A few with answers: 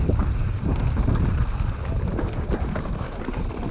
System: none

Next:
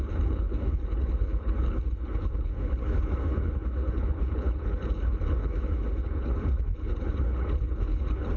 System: codec, HILCodec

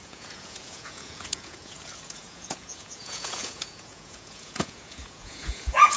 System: vocoder, Vocos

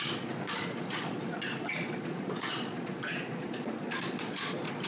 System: vocoder, Vocos